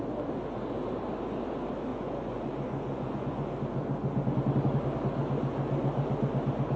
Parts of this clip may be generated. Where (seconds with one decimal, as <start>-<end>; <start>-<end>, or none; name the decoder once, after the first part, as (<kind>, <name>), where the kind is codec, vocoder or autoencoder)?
1.9-3.5 (vocoder, Vocos)